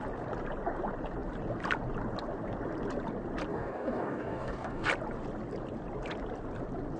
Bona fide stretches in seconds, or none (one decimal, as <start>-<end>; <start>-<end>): 0.0-3.5; 4.9-7.0